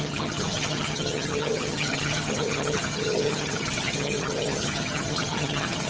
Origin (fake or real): fake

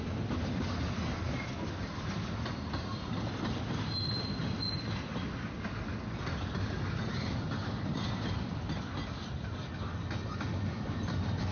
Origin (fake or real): real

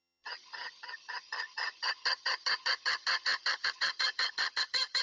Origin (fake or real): fake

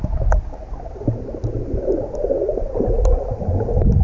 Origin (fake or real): real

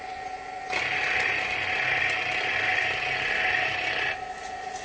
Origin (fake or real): real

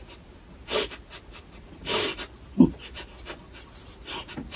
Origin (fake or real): real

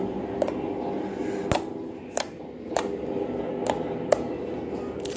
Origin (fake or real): real